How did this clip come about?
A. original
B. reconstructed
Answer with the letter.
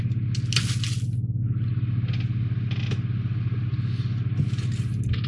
A